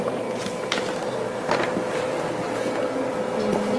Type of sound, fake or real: real